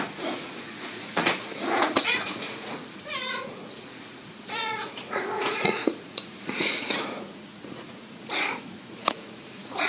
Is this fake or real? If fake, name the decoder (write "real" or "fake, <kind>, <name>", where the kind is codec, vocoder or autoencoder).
fake, vocoder, Vocos